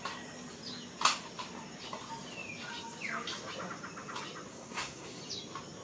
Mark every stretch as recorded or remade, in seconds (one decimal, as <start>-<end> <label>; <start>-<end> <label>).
0.0-4.5 recorded; 4.5-5.2 remade; 5.2-5.8 recorded